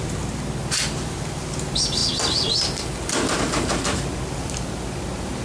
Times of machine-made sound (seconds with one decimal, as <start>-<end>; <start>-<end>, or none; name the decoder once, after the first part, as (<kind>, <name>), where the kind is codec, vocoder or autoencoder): none